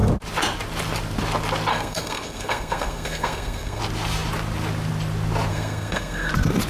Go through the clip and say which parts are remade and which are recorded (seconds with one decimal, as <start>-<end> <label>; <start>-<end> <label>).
0.0-1.7 recorded; 1.7-3.8 remade; 3.8-5.5 recorded; 5.5-6.3 remade; 6.3-6.7 recorded

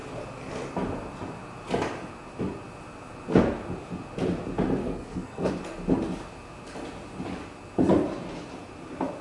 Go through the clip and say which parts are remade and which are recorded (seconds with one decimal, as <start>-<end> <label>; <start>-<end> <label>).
0.0-4.8 recorded; 4.8-5.5 remade; 5.5-9.2 recorded

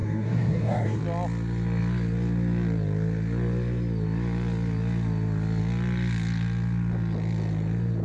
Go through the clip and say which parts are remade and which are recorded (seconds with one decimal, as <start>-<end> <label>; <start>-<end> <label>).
0.0-1.0 remade; 1.0-8.0 recorded

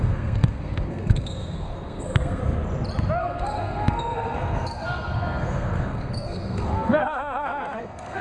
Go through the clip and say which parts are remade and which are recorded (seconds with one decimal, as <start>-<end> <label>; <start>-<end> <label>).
0.0-2.4 remade; 2.4-3.2 recorded; 3.2-8.2 remade

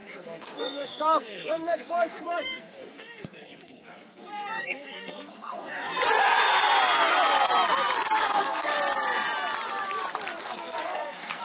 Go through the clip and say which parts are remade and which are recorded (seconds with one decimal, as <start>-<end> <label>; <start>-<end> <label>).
0.0-5.9 remade; 5.9-8.2 recorded; 8.2-8.7 remade; 8.7-10.4 recorded; 10.4-11.4 remade

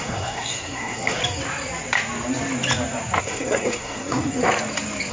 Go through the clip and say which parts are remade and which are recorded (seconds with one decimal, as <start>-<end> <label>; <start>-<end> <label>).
0.0-1.2 remade; 1.2-3.2 recorded; 3.2-4.4 remade; 4.4-5.1 recorded